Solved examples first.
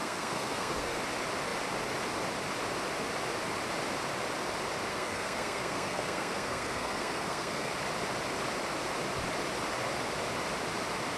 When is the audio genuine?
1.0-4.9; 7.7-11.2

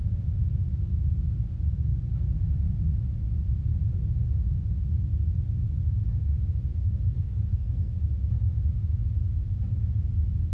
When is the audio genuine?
0.0-6.7; 7.9-10.5

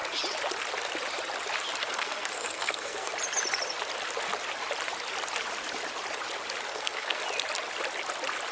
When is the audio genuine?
0.0-1.8; 3.1-6.7; 7.2-8.5

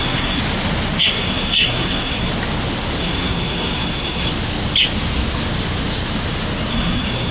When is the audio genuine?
0.4-1.0; 2.3-3.0; 4.3-6.7

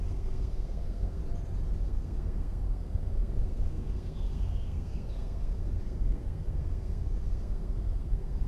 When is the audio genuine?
1.2-1.8

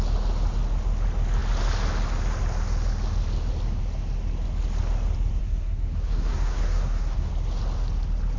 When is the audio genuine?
0.0-5.4; 7.3-8.4

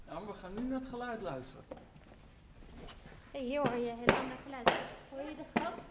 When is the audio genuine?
0.0-5.9

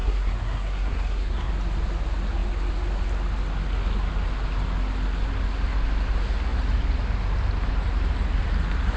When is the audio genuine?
1.5-9.0